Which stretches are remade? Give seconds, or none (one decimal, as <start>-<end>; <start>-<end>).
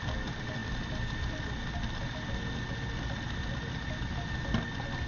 none